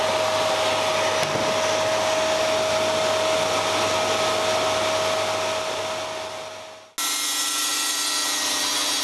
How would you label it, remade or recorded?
recorded